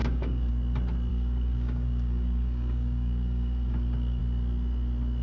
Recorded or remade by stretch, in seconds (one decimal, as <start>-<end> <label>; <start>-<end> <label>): 0.0-0.5 remade; 0.5-1.1 recorded; 1.1-4.2 remade; 4.2-5.2 recorded